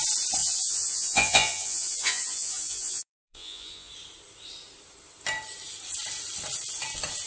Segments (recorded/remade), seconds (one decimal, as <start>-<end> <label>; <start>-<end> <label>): 0.0-0.4 recorded; 0.4-3.9 remade; 3.9-7.3 recorded